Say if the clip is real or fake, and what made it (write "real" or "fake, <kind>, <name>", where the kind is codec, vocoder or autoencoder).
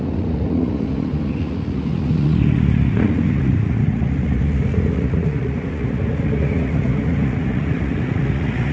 fake, vocoder, Vocos